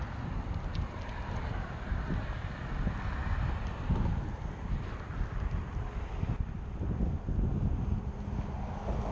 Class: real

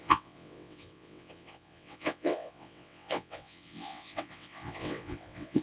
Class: fake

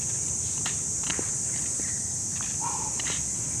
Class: real